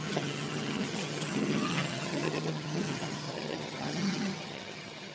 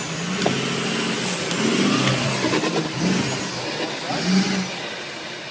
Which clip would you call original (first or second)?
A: second